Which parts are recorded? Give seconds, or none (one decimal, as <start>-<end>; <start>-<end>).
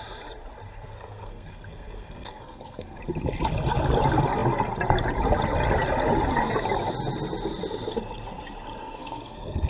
0.0-0.7; 3.0-8.8